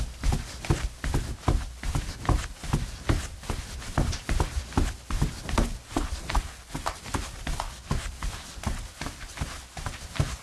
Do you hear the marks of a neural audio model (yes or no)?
no